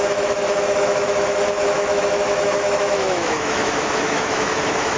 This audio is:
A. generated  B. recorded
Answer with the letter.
A